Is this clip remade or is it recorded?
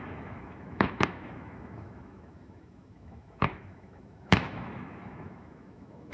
remade